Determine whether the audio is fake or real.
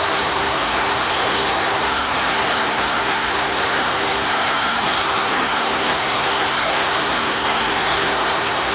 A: fake